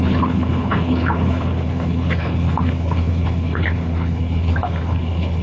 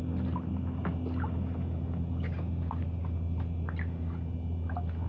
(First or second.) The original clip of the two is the second